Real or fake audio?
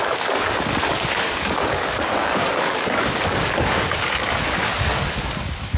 fake